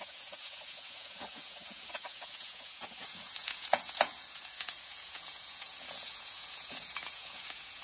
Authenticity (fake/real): fake